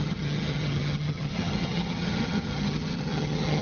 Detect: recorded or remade remade